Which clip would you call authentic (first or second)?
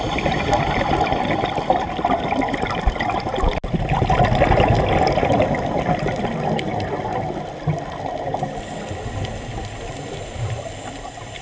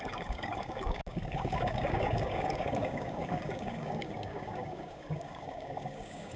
first